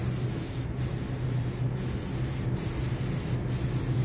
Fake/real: real